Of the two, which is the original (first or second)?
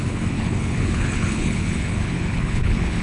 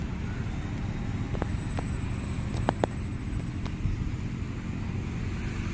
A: second